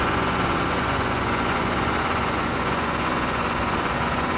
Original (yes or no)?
no